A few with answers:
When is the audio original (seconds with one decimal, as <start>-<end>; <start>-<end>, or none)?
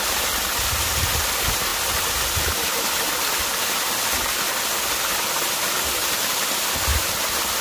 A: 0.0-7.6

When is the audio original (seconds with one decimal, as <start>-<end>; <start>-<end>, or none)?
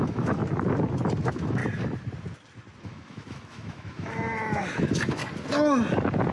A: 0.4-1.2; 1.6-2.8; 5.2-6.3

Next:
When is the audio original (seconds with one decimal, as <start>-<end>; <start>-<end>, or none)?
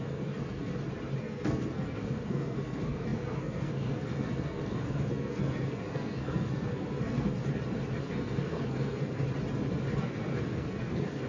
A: 0.7-1.2; 7.4-8.0; 9.2-10.0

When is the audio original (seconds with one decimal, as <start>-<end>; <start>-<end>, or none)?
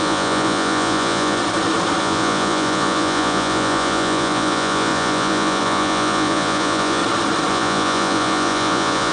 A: 1.4-2.0; 7.0-7.5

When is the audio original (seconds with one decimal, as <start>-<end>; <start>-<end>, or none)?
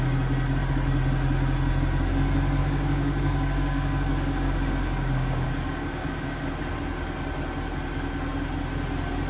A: 0.0-2.6; 6.5-9.3